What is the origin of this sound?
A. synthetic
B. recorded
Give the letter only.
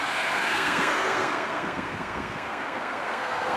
A